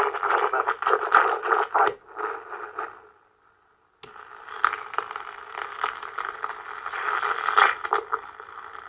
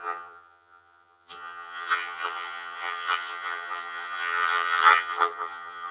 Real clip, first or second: first